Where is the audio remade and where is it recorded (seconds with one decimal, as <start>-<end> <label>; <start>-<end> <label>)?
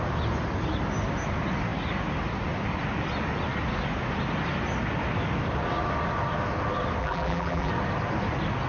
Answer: 0.0-7.0 recorded; 7.0-7.7 remade; 7.7-8.7 recorded